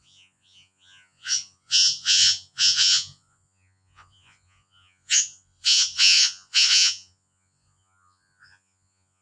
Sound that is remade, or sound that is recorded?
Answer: remade